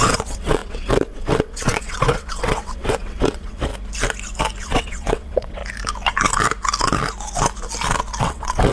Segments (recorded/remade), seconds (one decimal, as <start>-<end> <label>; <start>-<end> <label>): 0.0-3.7 remade; 3.7-4.6 recorded; 4.6-5.6 remade; 5.6-8.2 recorded; 8.2-8.7 remade